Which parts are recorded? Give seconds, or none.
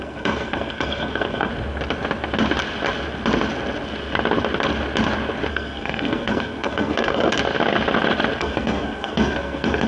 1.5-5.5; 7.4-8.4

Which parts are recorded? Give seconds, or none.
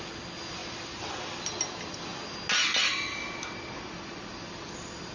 0.0-5.1